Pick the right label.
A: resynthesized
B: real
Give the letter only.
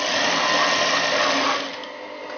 B